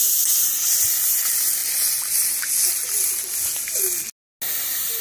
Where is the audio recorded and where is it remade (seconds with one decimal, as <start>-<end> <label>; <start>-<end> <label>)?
0.0-5.0 recorded